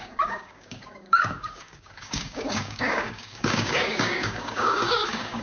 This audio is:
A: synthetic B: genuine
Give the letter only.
A